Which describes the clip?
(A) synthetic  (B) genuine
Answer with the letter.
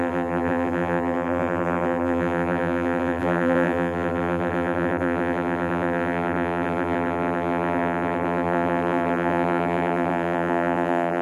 A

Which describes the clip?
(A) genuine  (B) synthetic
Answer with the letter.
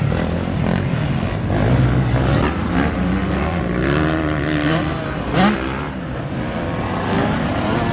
A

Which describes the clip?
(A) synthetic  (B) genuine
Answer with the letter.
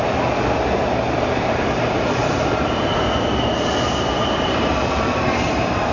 A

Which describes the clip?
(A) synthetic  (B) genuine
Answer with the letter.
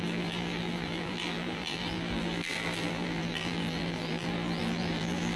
A